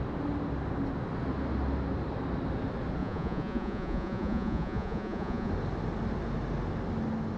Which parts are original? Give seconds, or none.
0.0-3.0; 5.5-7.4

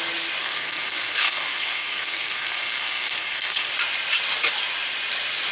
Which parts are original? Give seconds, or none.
0.0-0.4; 3.7-5.5

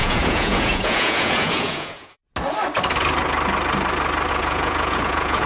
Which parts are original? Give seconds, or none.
2.2-4.3

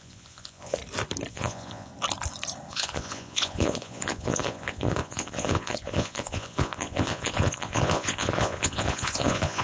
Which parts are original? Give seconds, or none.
0.8-1.3; 1.9-2.7

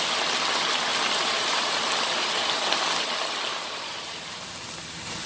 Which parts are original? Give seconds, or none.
0.0-0.9; 1.9-3.5

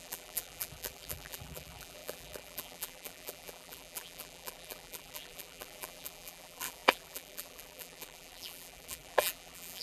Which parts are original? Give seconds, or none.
none

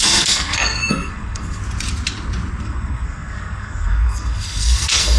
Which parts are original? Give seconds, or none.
1.6-2.6

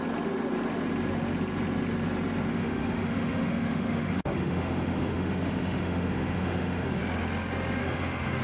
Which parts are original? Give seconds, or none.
0.0-2.5; 7.0-7.8